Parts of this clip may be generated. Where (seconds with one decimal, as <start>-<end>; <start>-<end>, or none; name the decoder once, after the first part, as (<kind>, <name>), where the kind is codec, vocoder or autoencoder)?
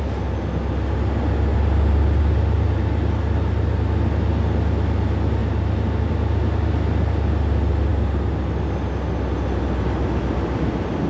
none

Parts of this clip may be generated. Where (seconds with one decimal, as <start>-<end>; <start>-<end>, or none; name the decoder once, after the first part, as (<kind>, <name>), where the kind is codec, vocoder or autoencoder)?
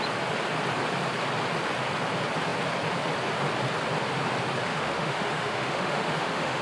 4.7-6.6 (autoencoder, DAC-VAE)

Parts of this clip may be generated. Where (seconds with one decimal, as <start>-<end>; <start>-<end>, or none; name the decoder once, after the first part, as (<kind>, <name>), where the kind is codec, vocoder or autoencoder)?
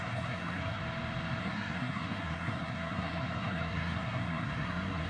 0.0-0.8 (codec, SNAC); 1.4-5.1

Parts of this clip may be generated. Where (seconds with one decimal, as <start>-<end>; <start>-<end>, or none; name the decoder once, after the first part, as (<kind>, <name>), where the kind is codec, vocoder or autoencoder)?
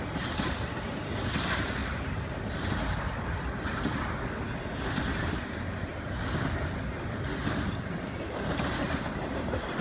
1.8-2.5 (vocoder, BigVGAN v2); 5.9-6.8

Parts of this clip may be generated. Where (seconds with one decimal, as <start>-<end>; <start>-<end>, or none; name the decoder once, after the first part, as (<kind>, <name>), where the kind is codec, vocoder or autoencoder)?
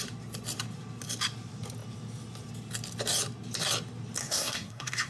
4.2-5.1 (codec, SNAC)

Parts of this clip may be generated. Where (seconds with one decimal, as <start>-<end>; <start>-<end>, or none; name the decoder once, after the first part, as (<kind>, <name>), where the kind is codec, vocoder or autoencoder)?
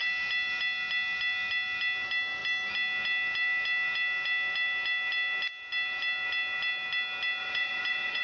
7.4-8.2 (vocoder, Vocos)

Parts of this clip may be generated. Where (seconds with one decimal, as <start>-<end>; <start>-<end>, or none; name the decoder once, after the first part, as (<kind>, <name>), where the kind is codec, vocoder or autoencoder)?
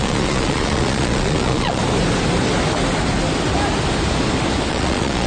0.0-1.8 (vocoder, Vocos); 4.7-5.3